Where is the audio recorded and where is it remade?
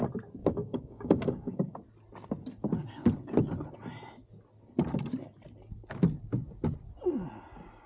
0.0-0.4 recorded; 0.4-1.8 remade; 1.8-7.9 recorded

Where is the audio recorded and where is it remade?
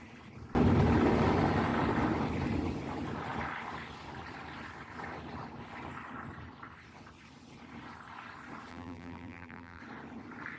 0.0-8.7 recorded; 8.7-9.8 remade; 9.8-10.6 recorded